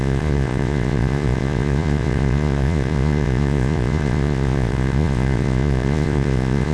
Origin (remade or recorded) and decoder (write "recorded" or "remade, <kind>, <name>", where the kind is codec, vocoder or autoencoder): remade, vocoder, Vocos